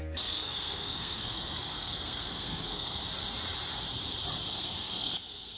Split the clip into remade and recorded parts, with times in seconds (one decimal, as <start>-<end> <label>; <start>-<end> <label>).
0.0-3.0 remade; 3.0-4.5 recorded; 4.5-5.6 remade